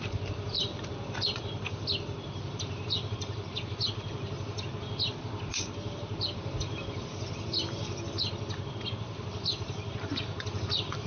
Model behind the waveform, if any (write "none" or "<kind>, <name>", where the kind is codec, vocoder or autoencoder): vocoder, BigVGAN v2